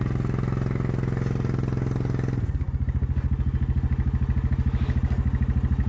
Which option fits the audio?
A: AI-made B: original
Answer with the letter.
B